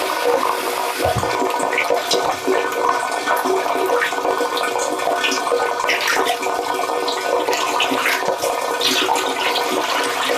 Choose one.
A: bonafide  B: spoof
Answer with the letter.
A